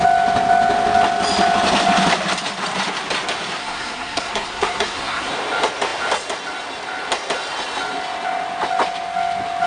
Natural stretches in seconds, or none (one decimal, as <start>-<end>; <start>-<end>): 0.0-3.6; 5.3-9.7